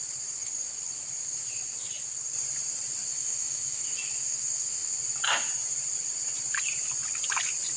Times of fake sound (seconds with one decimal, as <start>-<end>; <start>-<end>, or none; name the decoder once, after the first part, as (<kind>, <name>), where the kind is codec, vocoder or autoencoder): 3.1-4.9 (autoencoder, DAC-VAE)